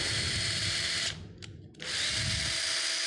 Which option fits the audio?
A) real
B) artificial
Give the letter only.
A